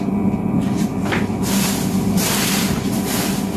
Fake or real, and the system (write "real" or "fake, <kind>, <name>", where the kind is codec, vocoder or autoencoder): real